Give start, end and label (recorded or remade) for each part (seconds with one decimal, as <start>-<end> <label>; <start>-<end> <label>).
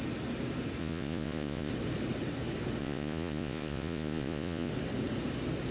0.0-0.8 recorded; 0.8-1.7 remade; 1.7-2.8 recorded; 2.8-4.7 remade; 4.7-5.7 recorded